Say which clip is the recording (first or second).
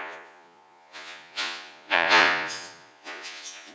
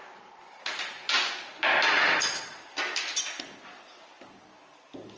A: second